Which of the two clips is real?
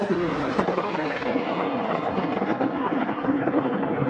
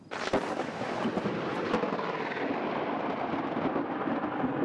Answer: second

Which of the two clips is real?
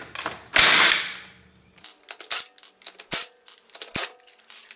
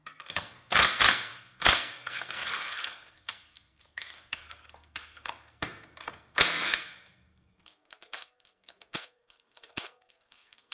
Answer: first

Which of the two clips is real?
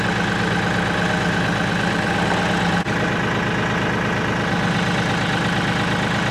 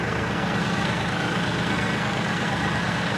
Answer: first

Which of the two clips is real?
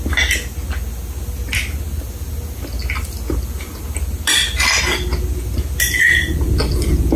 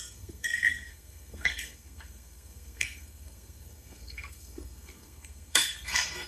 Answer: first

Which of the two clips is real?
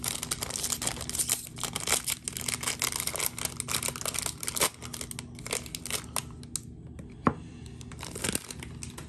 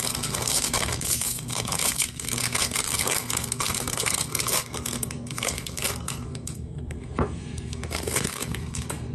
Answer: first